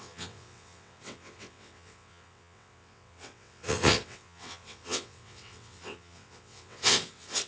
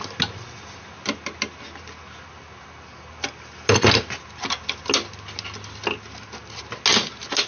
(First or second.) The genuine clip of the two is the second